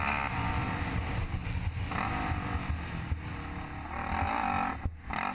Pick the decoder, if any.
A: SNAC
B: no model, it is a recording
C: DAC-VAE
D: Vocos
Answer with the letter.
B